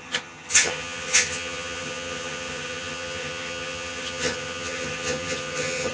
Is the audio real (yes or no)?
no